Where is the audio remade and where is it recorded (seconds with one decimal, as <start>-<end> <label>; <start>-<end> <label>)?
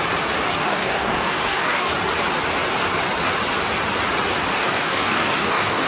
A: 0.0-0.5 recorded; 0.5-1.9 remade; 1.9-4.5 recorded; 4.5-5.9 remade